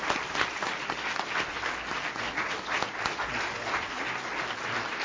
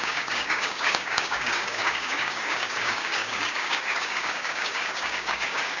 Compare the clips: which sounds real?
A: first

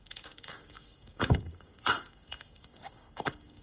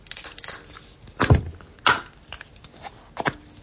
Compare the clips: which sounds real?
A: second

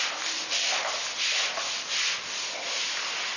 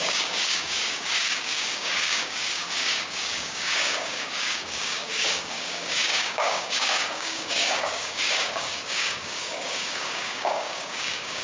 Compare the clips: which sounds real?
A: first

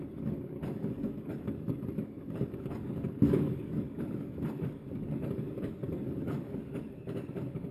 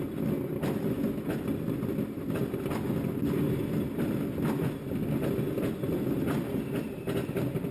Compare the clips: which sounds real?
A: second